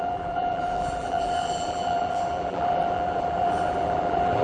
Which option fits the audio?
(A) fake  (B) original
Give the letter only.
A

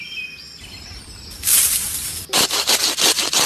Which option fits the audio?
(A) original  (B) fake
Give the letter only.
B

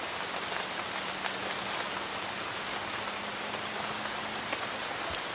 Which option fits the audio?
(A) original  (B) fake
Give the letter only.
A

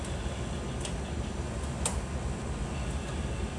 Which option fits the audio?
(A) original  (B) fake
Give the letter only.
A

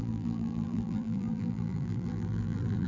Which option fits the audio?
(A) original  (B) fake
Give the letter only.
B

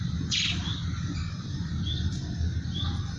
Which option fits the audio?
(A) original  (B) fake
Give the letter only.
A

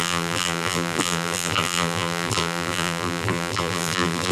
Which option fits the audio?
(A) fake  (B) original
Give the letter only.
A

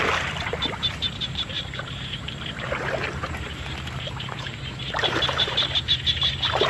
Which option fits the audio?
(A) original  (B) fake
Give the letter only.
B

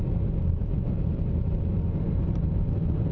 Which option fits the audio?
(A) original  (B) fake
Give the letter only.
B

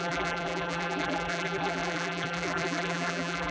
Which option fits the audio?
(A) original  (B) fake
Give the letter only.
B